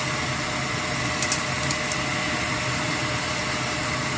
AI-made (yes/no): no